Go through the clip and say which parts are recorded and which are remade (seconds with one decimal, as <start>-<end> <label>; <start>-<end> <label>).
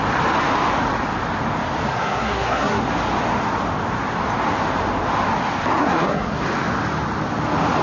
0.0-1.9 recorded; 1.9-2.8 remade; 2.8-5.8 recorded; 5.8-6.4 remade; 6.4-7.8 recorded